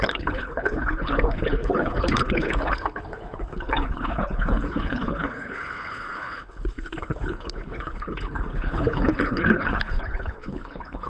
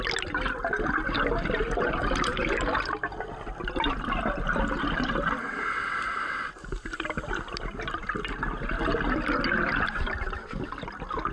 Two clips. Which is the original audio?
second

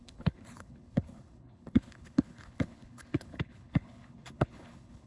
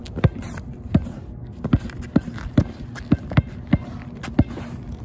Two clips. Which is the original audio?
second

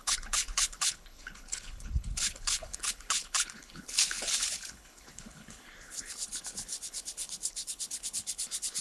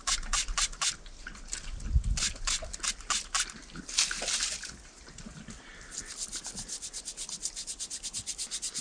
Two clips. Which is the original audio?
second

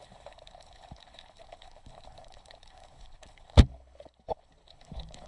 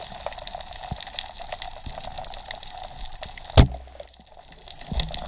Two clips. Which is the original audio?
second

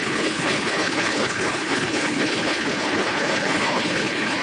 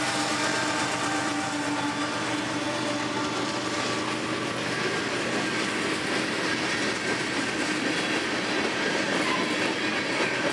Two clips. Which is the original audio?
second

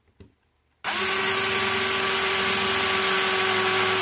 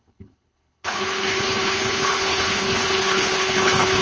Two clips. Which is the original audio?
first